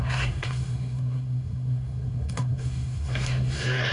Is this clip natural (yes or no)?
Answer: no